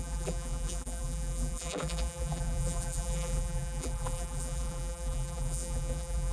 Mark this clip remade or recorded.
remade